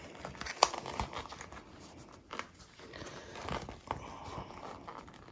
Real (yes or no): yes